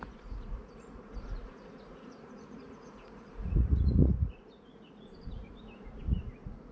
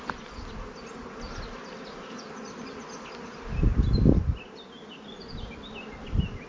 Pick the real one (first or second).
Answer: second